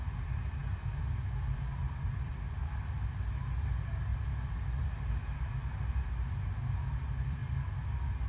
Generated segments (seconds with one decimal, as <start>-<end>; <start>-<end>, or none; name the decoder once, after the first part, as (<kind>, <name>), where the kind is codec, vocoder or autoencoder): 0.0-2.6 (vocoder, BigVGAN v2); 3.5-4.1; 6.9-7.4